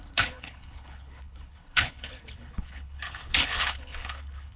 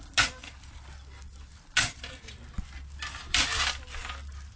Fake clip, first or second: first